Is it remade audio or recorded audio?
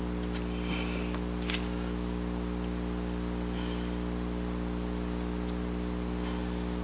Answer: recorded